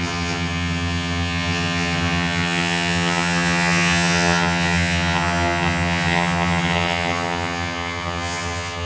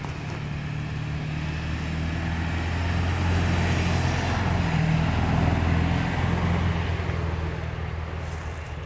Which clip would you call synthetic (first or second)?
first